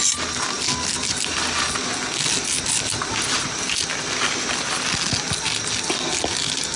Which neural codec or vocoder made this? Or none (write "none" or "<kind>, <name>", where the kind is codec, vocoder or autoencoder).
none